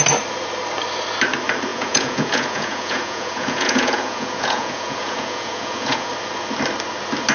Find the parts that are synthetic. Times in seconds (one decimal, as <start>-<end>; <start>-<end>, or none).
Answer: 1.7-6.1